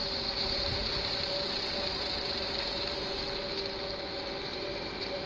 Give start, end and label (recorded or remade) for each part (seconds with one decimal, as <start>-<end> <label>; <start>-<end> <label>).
0.0-3.2 remade; 3.2-4.5 recorded; 4.5-5.3 remade